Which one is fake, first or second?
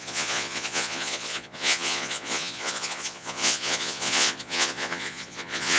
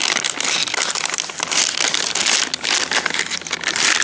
first